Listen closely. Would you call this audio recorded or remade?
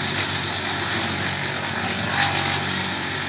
recorded